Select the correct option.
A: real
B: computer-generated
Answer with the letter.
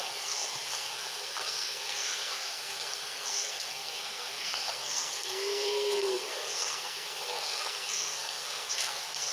B